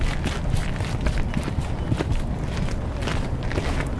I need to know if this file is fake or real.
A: real